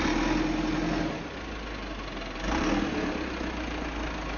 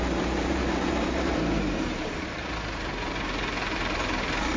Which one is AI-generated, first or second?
second